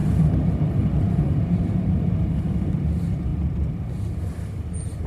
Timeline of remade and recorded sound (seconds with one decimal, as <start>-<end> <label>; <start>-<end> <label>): 0.0-5.1 recorded